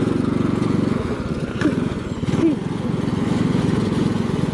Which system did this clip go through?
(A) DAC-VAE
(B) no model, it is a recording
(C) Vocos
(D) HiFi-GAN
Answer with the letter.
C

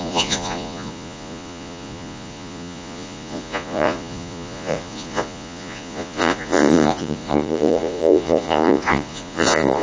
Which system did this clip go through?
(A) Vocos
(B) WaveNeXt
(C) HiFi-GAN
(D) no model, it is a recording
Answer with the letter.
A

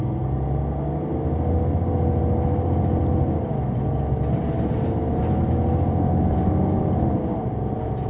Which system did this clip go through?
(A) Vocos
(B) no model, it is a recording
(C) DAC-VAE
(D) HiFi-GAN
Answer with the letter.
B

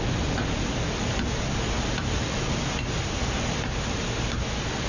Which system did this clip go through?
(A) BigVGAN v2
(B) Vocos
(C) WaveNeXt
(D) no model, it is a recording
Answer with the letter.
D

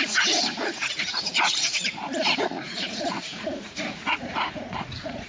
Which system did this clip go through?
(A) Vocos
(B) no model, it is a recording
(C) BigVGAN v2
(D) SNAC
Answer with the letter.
A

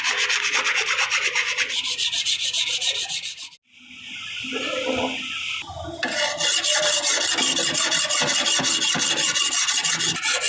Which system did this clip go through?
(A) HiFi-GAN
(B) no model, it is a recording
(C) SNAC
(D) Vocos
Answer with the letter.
B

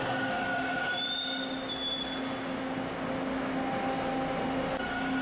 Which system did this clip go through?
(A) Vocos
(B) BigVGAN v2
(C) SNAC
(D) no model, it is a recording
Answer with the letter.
D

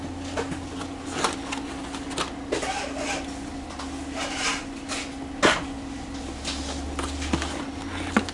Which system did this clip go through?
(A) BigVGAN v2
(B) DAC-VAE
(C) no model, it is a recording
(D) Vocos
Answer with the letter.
C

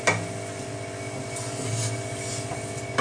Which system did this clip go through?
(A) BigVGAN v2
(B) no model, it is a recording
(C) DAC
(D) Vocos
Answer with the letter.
B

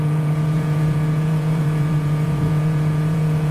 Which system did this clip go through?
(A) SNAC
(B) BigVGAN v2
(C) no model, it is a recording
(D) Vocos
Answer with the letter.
D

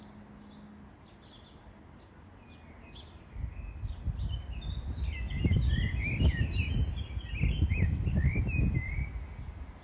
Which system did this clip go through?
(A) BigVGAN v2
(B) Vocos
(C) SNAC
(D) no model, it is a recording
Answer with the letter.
D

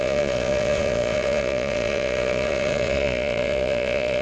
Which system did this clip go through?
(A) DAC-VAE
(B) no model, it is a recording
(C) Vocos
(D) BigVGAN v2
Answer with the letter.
C